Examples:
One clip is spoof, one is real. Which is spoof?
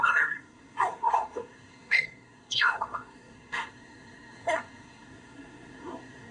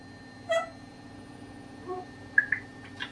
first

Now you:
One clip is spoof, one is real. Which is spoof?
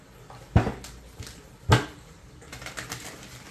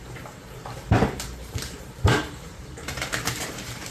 second